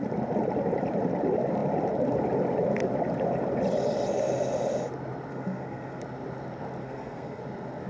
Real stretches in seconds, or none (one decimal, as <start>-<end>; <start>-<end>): 0.0-5.3; 6.0-6.8; 7.4-7.9